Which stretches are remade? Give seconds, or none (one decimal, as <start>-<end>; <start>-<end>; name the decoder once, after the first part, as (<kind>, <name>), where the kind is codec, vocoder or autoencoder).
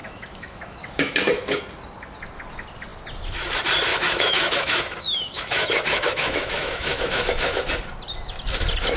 0.0-1.6 (autoencoder, DAC-VAE); 3.9-7.7